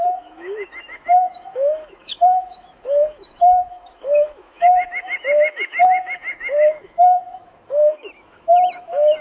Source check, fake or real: fake